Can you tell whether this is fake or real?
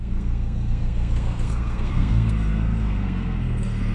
fake